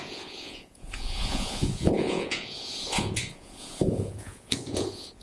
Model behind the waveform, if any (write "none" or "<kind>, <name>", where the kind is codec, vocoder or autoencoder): vocoder, Vocos